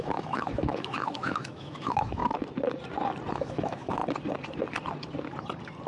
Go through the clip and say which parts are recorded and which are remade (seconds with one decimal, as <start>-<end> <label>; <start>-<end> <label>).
0.0-2.2 remade; 2.2-3.3 recorded; 3.3-4.0 remade; 4.0-5.9 recorded